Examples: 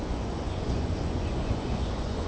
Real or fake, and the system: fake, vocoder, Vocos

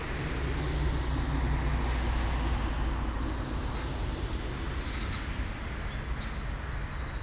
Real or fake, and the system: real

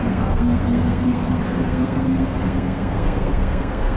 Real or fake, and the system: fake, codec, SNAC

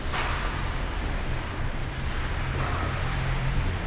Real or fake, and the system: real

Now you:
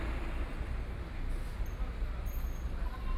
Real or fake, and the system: real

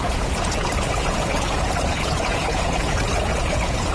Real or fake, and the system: fake, vocoder, Vocos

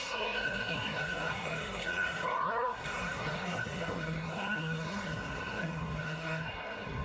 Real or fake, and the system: fake, codec, SNAC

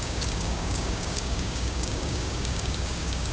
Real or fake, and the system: fake, codec, DAC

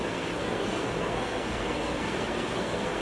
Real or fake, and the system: fake, codec, SNAC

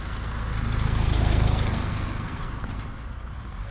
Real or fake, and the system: fake, codec, SNAC